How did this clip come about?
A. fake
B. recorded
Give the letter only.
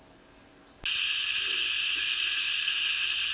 B